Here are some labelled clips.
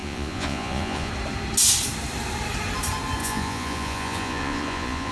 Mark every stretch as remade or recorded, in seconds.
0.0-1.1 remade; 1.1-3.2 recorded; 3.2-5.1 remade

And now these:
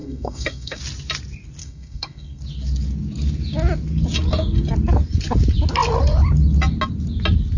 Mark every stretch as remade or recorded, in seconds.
0.0-0.8 remade; 0.8-1.6 recorded; 1.6-2.4 remade; 2.4-7.6 recorded

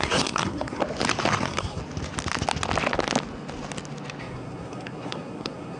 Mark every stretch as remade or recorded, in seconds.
0.0-0.8 remade; 0.8-1.4 recorded; 1.4-1.8 remade; 1.8-4.2 recorded; 4.2-5.8 remade

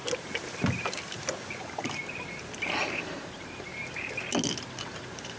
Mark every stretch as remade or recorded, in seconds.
0.0-1.6 recorded; 1.6-2.0 remade; 2.0-2.8 recorded; 2.8-3.7 remade; 3.7-4.8 recorded; 4.8-5.4 remade

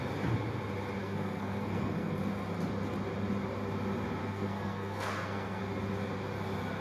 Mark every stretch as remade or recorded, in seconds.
0.0-1.0 recorded; 1.0-2.2 remade; 2.2-4.2 recorded; 4.2-5.6 remade; 5.6-6.8 recorded

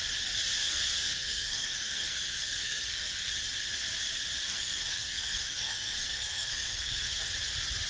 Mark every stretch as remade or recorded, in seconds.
0.0-0.6 recorded; 0.6-3.3 remade; 3.3-4.5 recorded; 4.5-7.2 remade; 7.2-7.9 recorded

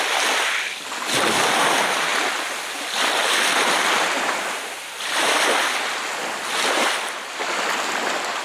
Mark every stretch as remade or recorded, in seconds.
0.0-8.4 recorded

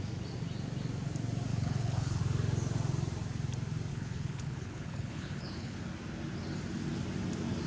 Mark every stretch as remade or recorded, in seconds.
0.0-1.5 recorded; 1.5-2.2 remade; 2.2-3.9 recorded; 3.9-5.8 remade; 5.8-7.7 recorded